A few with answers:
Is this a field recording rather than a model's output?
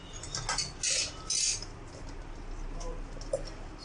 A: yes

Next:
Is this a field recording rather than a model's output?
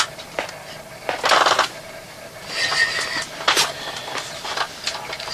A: yes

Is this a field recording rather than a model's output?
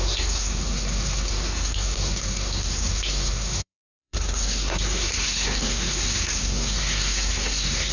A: no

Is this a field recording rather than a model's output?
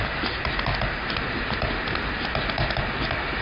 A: yes